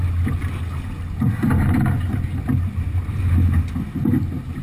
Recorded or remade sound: recorded